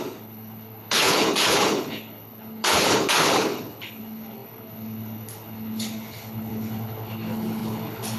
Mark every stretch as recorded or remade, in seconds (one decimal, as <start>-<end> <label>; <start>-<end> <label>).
0.0-8.2 remade